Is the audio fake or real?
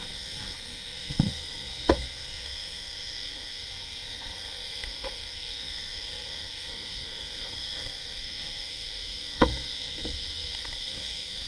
fake